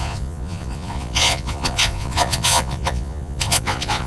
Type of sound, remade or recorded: remade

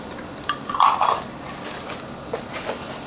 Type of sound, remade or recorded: recorded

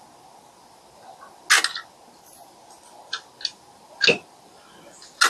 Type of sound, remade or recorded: recorded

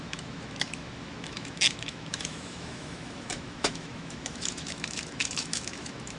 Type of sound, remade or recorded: remade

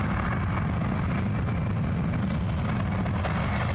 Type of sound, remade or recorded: recorded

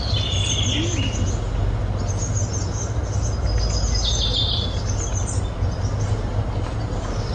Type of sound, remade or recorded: recorded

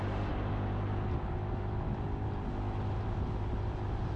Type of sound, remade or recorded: recorded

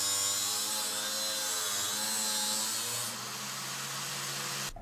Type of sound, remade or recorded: recorded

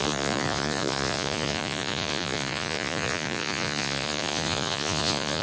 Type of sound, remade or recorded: remade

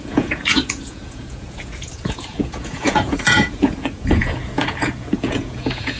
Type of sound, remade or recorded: remade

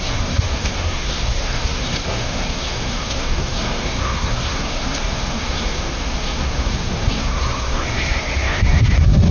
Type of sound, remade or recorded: remade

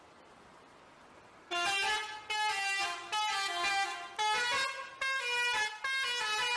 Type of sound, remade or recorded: recorded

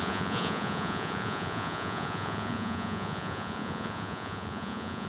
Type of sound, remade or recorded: remade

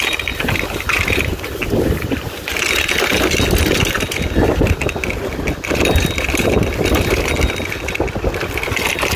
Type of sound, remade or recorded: recorded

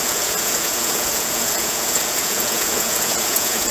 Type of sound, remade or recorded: remade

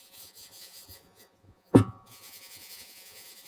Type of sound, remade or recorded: remade